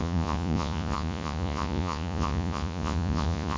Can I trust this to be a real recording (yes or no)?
no